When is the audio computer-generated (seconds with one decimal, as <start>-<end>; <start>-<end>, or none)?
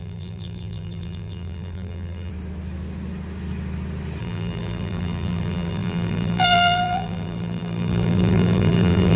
0.0-2.3; 4.2-9.2